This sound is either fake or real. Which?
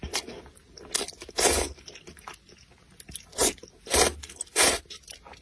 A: real